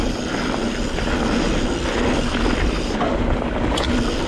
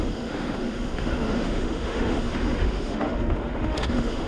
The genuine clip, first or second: first